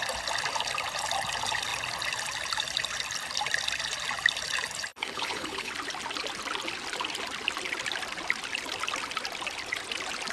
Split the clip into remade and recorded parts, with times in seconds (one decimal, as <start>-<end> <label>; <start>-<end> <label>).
0.0-4.9 recorded; 4.9-5.7 remade; 5.7-10.3 recorded